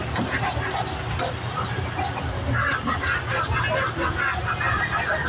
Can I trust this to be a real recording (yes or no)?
yes